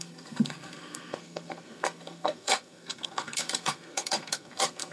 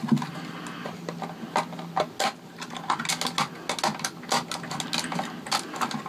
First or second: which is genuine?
second